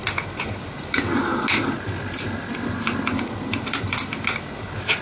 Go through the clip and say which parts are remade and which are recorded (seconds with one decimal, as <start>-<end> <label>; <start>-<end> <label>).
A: 0.0-5.0 recorded